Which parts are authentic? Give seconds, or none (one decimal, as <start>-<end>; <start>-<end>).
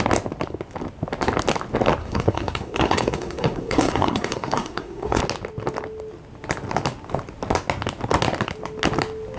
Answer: 0.0-2.0; 5.2-9.4